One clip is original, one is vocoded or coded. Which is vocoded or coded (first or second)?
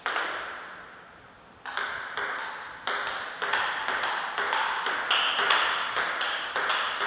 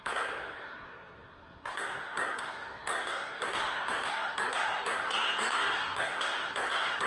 second